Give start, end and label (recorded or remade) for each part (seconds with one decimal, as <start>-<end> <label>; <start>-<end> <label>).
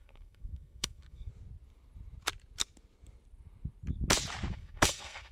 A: 0.0-1.3 remade; 1.3-4.5 recorded; 4.5-5.3 remade